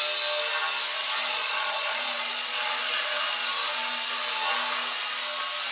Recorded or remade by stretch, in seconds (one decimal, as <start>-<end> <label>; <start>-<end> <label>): 0.0-1.0 recorded; 1.0-3.0 remade; 3.0-5.7 recorded